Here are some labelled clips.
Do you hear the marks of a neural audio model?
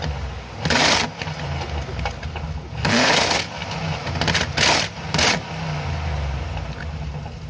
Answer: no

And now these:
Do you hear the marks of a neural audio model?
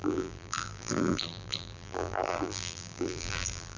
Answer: yes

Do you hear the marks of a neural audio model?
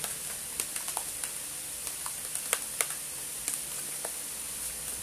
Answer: no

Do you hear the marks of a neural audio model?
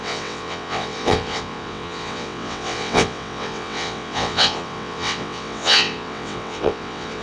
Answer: yes